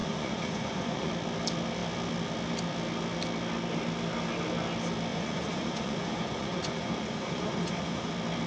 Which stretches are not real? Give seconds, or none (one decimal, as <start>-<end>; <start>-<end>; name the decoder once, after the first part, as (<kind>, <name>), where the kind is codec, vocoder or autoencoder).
0.0-1.1 (vocoder, Vocos); 5.1-8.1